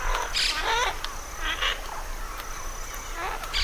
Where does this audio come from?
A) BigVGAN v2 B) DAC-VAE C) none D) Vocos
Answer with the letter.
C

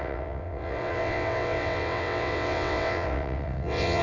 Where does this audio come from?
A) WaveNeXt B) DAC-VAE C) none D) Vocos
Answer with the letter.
A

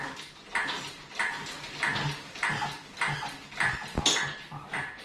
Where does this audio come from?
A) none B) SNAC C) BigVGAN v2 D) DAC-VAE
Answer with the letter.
A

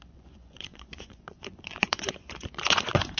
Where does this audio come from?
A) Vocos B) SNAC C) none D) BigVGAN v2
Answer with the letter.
A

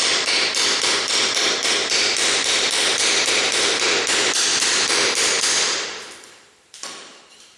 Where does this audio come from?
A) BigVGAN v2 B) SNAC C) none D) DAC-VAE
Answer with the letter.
A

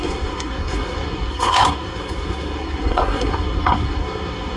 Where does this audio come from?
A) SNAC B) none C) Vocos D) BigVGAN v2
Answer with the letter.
A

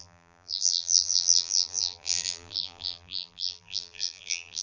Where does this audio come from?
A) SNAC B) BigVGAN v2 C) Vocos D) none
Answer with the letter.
B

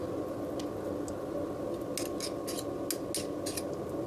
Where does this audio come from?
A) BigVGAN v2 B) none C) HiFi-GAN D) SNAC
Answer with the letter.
B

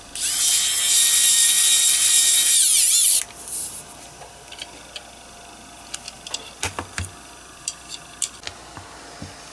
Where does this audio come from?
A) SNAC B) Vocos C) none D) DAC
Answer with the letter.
C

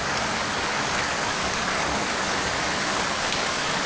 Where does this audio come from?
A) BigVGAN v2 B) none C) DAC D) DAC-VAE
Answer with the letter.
C